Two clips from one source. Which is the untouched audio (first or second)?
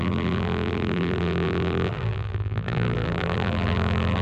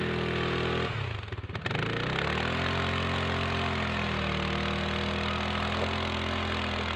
second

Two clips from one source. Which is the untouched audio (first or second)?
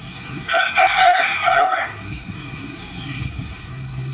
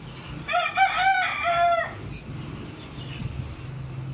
second